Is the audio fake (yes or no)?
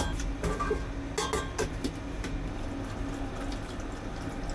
no